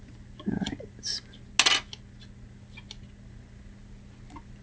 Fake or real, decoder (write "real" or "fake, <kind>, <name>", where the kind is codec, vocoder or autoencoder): real